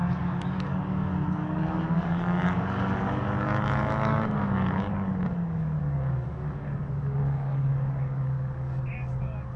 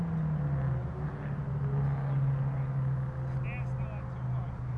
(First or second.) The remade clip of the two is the first